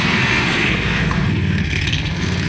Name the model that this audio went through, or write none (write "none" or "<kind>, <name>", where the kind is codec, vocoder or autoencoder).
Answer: codec, SNAC